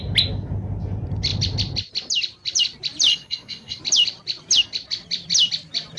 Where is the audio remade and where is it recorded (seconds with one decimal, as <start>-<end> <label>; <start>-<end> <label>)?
0.0-3.1 recorded; 3.1-3.8 remade; 3.8-6.0 recorded